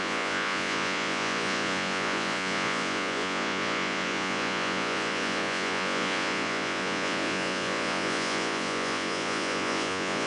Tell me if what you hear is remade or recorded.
remade